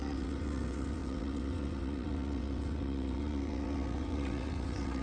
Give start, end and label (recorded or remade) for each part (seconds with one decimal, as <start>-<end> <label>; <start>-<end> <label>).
0.0-5.0 remade